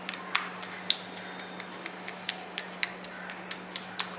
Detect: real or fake real